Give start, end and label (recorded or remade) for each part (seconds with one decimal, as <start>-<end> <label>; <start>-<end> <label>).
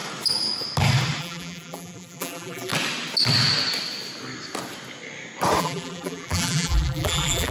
0.0-1.2 recorded; 1.2-2.7 remade; 2.7-5.6 recorded; 5.6-7.5 remade